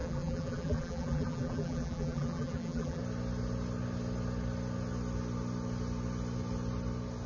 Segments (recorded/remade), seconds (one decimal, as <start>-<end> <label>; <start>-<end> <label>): 0.0-3.0 remade; 3.0-7.3 recorded